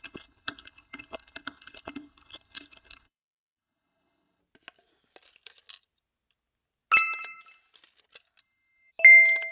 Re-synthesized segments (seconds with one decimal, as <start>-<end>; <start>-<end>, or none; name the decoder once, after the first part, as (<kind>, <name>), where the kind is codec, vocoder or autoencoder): 0.0-4.4 (codec, HILCodec); 8.4-8.9